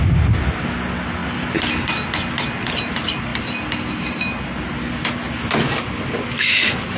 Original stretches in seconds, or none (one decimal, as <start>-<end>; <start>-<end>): 0.0-3.3; 4.1-7.0